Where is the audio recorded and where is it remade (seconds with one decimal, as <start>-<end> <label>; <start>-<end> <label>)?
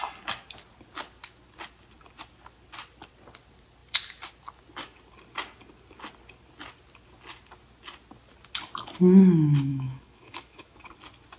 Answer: 0.0-9.7 recorded; 9.7-10.9 remade; 10.9-11.4 recorded